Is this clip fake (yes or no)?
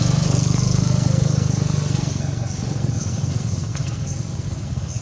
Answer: yes